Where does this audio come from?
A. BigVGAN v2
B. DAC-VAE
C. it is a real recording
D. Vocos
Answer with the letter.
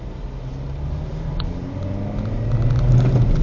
C